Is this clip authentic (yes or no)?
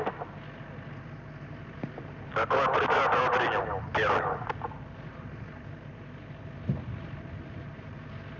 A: yes